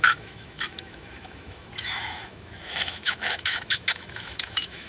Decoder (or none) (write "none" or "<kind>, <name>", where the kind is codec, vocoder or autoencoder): autoencoder, DAC-VAE